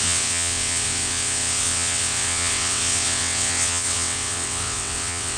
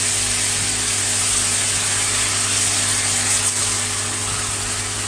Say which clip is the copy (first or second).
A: first